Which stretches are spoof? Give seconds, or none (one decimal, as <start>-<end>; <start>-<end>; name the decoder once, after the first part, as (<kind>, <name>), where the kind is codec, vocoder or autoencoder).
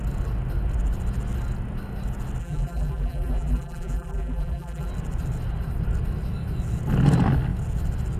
2.4-4.9 (vocoder, BigVGAN v2)